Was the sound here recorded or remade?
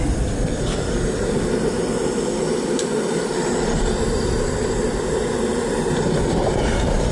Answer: remade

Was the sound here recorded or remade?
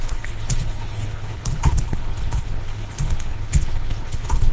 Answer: remade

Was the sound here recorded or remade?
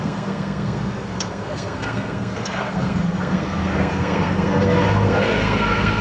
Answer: remade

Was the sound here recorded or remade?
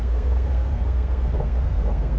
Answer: remade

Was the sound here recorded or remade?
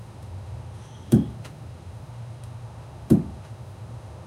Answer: remade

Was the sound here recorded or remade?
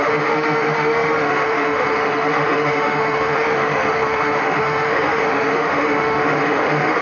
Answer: remade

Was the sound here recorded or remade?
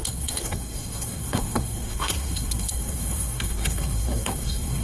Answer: remade